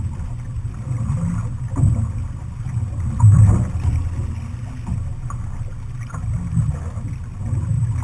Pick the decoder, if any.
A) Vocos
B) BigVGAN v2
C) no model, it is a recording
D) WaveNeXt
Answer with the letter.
C